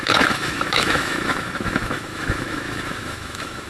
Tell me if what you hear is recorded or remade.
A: remade